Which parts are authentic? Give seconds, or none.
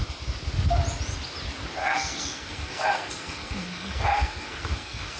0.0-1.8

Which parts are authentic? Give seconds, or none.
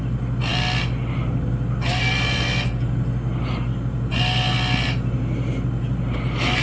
0.0-6.6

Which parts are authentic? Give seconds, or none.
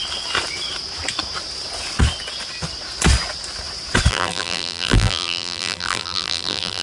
0.0-4.1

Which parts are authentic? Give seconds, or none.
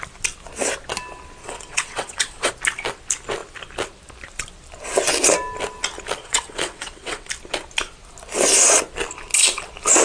0.0-1.4; 2.5-6.2; 7.3-10.0